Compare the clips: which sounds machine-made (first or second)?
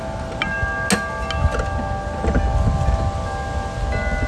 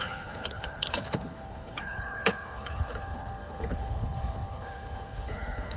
second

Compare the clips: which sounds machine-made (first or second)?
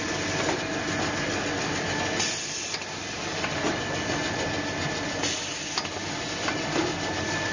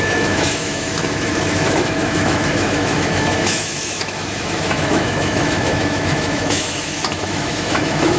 second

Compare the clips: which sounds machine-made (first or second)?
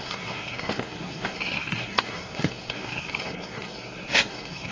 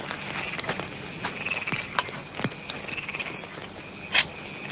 first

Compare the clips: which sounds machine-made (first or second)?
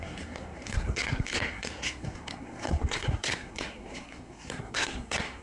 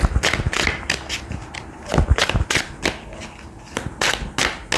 first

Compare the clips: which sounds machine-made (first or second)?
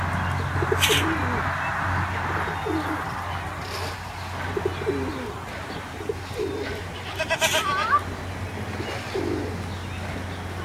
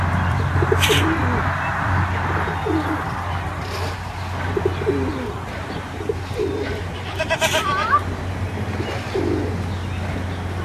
second